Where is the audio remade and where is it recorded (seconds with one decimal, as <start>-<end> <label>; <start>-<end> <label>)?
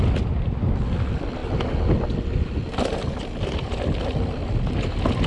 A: 0.0-5.3 recorded